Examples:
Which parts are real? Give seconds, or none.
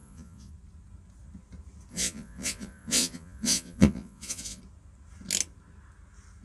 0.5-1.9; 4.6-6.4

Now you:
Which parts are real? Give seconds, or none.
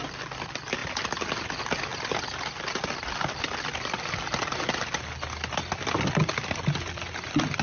0.0-7.6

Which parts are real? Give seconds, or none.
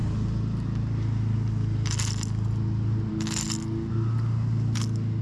0.0-5.2